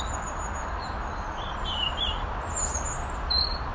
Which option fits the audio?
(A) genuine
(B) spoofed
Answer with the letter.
A